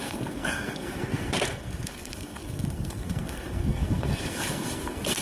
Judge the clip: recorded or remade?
remade